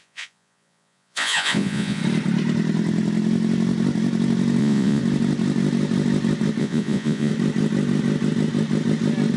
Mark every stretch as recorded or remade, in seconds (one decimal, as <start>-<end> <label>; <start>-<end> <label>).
0.0-2.0 remade; 2.0-4.6 recorded; 4.6-5.0 remade; 5.0-6.6 recorded; 6.6-7.3 remade; 7.3-9.4 recorded